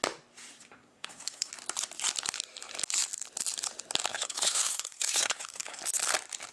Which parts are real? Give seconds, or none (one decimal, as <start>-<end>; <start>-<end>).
0.0-0.5; 1.5-4.1; 5.8-6.5